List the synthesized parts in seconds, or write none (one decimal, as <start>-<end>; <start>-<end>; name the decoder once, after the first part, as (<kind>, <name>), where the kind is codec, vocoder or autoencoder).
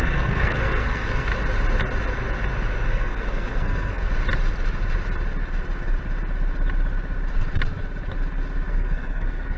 0.0-1.3 (codec, SNAC); 2.9-4.1; 8.7-9.6